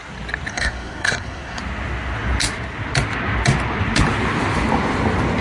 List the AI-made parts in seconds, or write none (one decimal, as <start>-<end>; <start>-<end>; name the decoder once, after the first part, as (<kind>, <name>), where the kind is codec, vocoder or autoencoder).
0.5-1.6 (codec, SNAC)